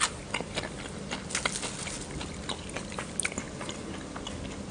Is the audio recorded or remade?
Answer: recorded